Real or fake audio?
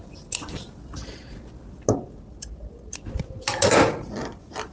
real